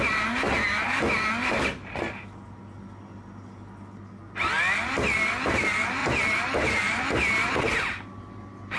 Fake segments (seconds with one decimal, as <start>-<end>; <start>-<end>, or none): 6.0-7.5